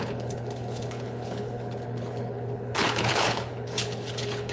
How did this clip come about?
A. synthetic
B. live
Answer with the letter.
A